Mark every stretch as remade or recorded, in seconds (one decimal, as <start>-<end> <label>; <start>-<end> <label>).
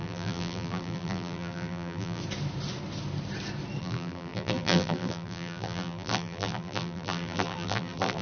0.0-2.2 remade; 2.2-3.8 recorded; 3.8-8.2 remade